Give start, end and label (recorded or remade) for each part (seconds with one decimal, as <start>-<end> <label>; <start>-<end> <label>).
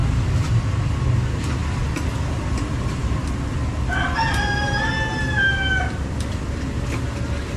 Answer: 0.0-7.6 recorded